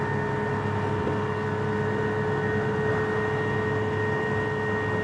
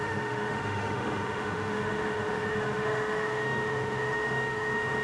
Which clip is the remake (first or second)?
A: second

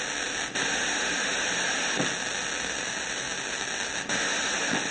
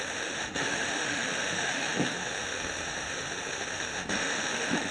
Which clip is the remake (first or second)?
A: second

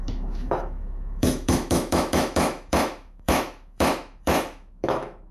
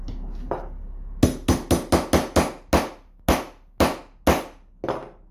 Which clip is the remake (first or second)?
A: first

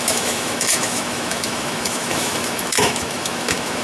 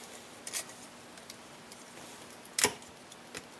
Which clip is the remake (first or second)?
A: first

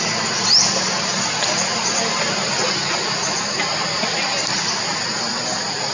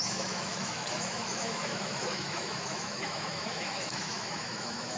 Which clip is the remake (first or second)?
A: second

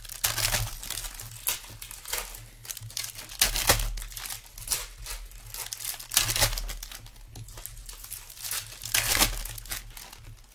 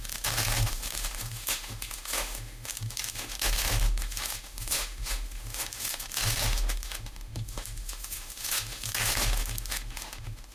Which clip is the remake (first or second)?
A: second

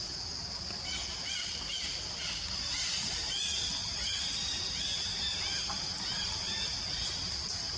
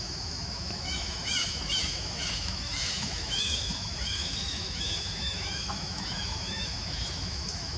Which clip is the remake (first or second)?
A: second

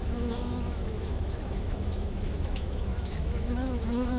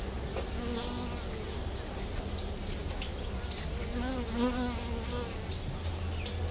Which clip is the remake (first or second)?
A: first